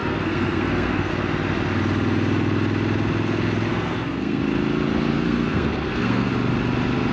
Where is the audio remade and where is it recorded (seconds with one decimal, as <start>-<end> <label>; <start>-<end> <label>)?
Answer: 0.0-1.1 remade; 1.1-3.7 recorded; 3.7-4.4 remade; 4.4-5.1 recorded; 5.1-6.3 remade; 6.3-7.1 recorded